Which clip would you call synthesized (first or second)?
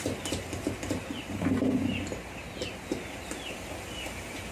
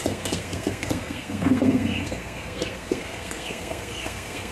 second